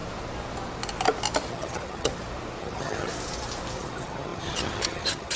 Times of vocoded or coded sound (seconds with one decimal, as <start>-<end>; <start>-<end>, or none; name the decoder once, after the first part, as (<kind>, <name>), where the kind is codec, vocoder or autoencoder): 1.5-2.1 (vocoder, HiFi-GAN); 2.6-3.1; 3.8-5.4